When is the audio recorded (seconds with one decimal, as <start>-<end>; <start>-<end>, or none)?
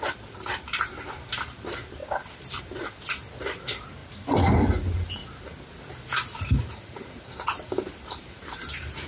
2.0-2.6; 4.0-4.6; 5.2-6.7